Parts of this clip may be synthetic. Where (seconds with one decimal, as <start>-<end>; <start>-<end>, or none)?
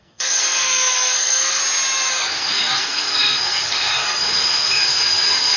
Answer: 0.0-1.6; 2.1-5.6